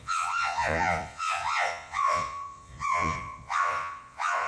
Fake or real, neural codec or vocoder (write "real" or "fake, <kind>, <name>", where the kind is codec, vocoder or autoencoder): fake, vocoder, Vocos